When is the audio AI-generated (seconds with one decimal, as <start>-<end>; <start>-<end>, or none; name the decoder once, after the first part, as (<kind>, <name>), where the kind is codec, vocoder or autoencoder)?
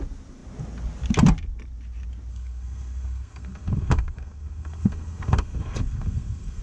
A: 2.3-6.6 (codec, SNAC)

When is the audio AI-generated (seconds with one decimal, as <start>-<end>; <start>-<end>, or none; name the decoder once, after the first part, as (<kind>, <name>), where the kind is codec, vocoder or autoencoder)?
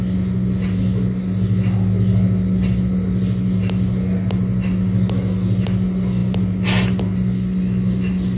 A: none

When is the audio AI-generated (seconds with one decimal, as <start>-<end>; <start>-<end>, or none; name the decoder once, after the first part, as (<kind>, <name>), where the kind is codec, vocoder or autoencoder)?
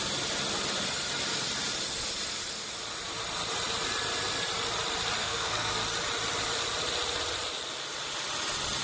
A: 5.2-5.7 (codec, SNAC)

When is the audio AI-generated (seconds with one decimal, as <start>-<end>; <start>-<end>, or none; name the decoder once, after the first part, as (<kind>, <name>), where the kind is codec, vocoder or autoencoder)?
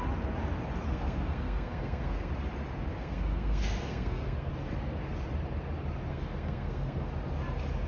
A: 0.9-2.3 (codec, SNAC); 2.9-4.5; 6.1-7.1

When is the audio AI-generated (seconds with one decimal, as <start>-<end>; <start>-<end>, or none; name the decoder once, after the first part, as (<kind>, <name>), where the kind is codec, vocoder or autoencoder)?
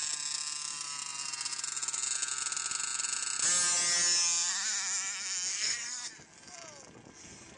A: 5.5-6.1 (codec, SNAC)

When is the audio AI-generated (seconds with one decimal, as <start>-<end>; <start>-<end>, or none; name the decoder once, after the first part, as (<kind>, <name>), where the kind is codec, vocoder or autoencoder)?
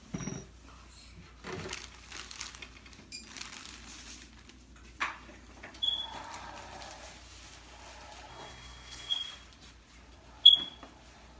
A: 8.3-9.1 (codec, SNAC)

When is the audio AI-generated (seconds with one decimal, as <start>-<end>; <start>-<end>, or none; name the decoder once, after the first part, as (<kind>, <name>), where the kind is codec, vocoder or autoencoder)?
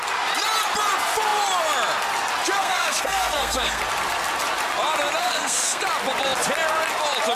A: 2.6-3.8 (codec, SNAC); 5.2-5.8